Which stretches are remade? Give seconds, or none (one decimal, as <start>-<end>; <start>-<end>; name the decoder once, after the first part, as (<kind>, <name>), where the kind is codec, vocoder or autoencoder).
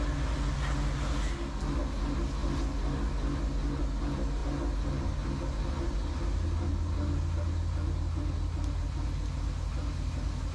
none